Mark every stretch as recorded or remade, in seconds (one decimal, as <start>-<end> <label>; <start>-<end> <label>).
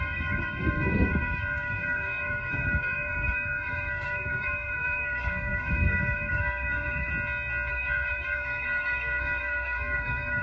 0.0-7.1 remade; 7.1-7.7 recorded; 7.7-10.4 remade